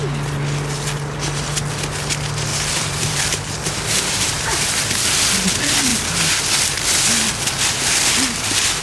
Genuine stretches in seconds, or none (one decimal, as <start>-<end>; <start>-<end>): 0.0-2.5; 4.7-5.9; 6.4-8.8